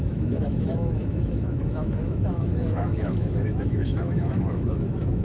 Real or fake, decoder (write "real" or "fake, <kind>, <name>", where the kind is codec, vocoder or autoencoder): fake, autoencoder, DAC-VAE